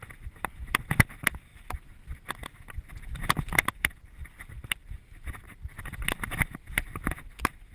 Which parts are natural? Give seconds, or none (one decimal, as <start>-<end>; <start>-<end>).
0.0-7.7